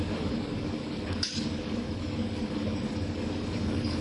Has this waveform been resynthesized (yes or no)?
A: yes